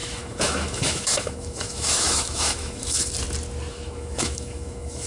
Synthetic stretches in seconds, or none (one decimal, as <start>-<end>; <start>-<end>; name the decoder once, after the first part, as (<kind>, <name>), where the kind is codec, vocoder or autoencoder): 0.0-3.1 (autoencoder, DAC-VAE); 3.7-5.1